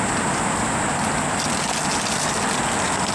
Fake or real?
real